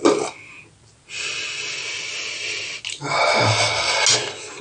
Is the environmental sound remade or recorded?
recorded